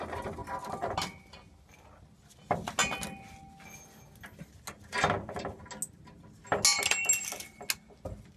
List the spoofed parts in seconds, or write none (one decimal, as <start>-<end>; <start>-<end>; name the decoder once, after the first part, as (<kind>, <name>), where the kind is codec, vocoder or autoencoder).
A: none